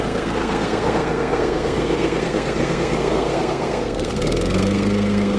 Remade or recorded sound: remade